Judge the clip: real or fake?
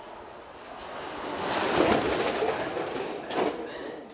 real